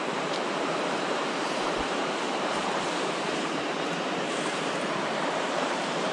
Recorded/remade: remade